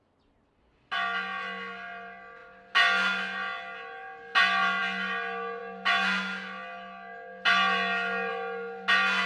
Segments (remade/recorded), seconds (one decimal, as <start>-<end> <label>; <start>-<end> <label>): 0.0-9.3 recorded